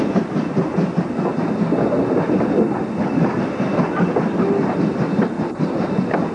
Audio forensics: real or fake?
real